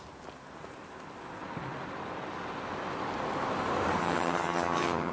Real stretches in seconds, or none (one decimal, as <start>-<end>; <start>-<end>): 0.0-4.0